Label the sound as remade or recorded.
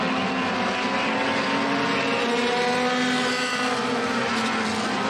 recorded